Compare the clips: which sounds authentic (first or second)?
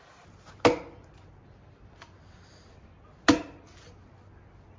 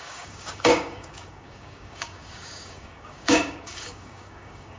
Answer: first